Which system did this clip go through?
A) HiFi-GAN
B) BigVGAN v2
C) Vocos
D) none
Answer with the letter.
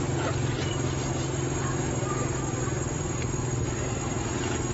D